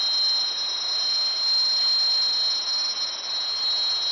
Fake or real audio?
real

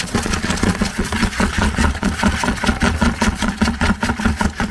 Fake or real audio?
fake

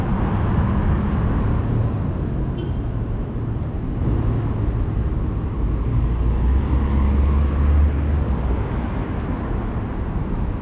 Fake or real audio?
real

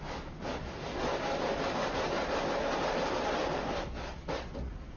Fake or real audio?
real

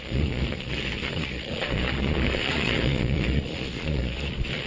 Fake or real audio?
fake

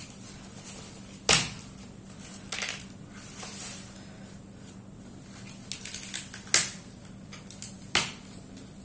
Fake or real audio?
real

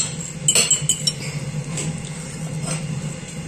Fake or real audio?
real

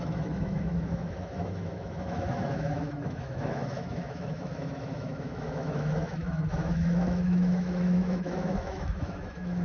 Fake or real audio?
fake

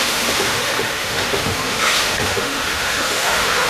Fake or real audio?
fake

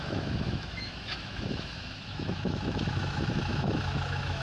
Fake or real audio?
fake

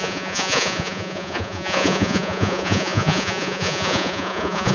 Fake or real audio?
fake